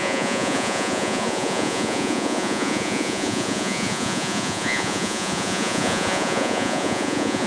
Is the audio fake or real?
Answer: fake